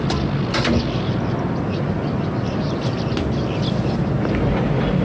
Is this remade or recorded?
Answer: recorded